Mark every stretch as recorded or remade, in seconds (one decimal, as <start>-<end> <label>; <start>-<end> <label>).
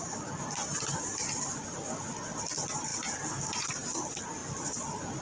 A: 0.0-5.2 recorded